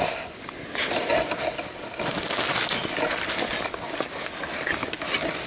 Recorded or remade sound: recorded